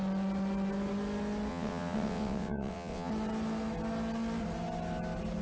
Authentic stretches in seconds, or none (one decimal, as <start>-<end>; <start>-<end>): 0.0-1.5; 3.1-5.4